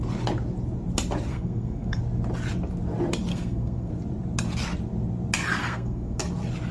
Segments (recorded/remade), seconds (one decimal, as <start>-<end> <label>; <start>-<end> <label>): 0.0-1.3 recorded; 1.3-2.0 remade; 2.0-3.3 recorded; 3.3-3.9 remade; 3.9-5.6 recorded; 5.6-6.2 remade; 6.2-6.7 recorded